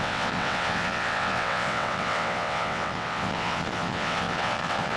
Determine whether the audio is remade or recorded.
remade